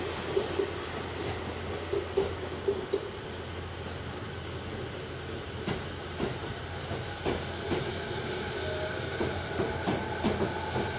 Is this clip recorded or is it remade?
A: recorded